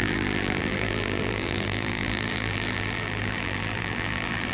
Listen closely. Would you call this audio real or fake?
fake